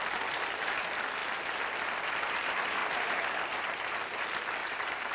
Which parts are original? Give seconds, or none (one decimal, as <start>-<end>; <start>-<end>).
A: 0.0-4.6